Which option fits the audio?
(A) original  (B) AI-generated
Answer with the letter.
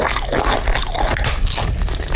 A